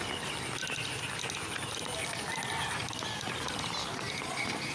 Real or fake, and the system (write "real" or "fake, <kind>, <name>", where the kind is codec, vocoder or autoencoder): real